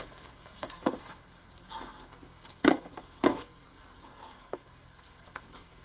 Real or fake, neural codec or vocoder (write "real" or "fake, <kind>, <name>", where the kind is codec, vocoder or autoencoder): fake, codec, SNAC